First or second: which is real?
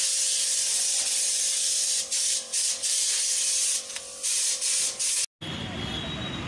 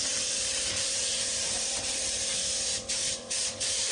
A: first